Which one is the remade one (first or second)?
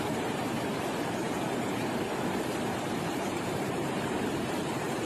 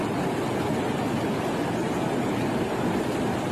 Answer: first